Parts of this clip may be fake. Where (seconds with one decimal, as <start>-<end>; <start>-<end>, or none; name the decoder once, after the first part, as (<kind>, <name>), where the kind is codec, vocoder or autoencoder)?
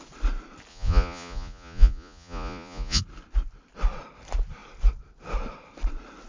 0.7-3.0 (vocoder, Vocos)